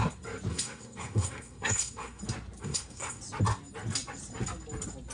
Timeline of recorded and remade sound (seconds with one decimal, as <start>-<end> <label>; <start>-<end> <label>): 0.0-0.5 recorded; 0.5-2.2 remade; 2.2-2.6 recorded; 2.6-3.2 remade; 3.2-5.1 recorded